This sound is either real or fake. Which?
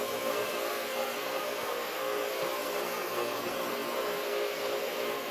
fake